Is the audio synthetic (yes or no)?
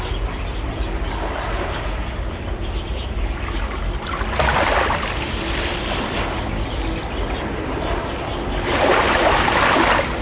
no